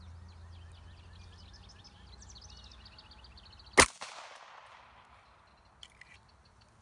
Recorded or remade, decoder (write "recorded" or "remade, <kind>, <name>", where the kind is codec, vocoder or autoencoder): recorded